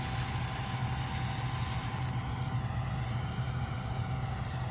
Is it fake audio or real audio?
real